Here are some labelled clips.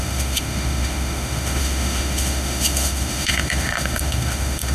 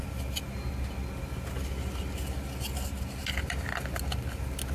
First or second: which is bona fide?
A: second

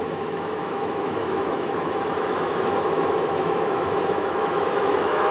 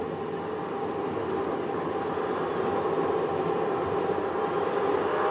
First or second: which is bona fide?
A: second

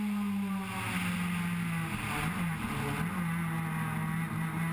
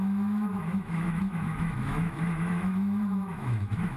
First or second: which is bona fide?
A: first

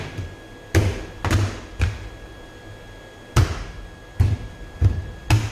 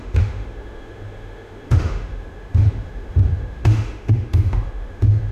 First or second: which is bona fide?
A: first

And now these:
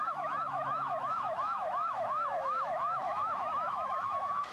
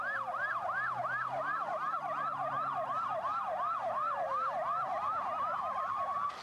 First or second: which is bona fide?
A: second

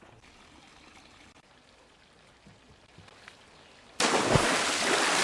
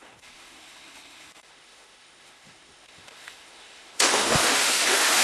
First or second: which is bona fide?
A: first